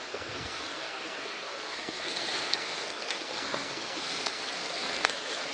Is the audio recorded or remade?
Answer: remade